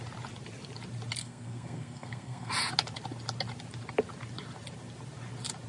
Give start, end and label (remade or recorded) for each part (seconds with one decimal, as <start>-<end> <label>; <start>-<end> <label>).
0.0-1.2 recorded; 1.2-2.5 remade; 2.5-5.7 recorded